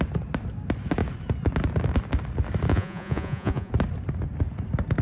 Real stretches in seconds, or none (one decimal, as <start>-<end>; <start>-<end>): 0.0-2.7; 3.7-5.0